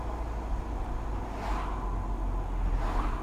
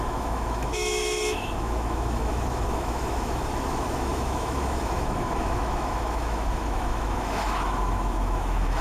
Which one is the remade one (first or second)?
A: second